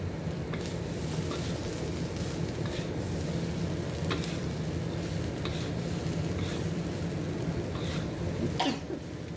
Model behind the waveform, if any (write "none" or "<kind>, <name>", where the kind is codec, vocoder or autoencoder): none